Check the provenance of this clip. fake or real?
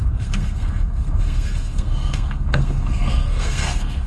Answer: fake